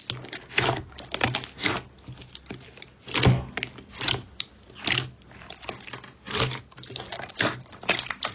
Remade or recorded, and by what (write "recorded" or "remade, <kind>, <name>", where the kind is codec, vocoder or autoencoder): recorded